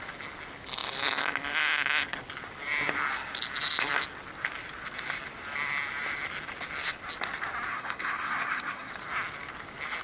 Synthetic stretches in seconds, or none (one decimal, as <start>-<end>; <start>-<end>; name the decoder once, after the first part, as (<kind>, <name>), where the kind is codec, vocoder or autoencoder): 7.7-8.9 (codec, SNAC)